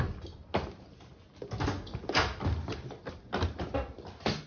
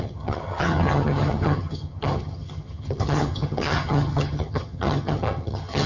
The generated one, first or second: second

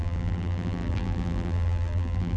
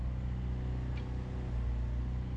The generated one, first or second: first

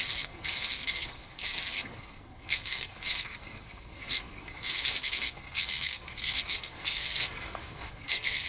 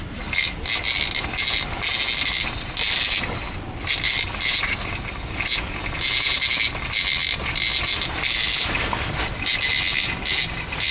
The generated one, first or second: first